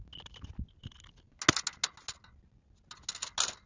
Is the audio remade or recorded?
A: recorded